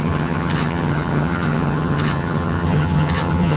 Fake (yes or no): yes